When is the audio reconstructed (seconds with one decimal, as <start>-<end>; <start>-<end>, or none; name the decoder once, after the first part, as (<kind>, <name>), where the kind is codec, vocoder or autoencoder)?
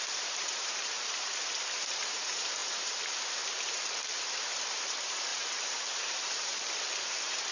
0.0-5.3 (vocoder, BigVGAN v2); 6.0-6.5